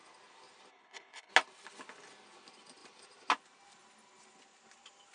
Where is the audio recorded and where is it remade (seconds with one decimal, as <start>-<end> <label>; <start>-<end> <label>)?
0.0-0.7 recorded; 0.7-1.3 remade; 1.3-5.1 recorded